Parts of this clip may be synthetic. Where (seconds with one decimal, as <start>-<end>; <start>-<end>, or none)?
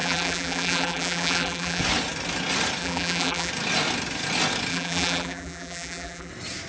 0.0-1.8; 2.8-3.5; 4.7-6.3